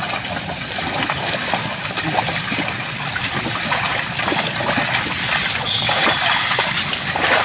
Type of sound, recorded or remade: recorded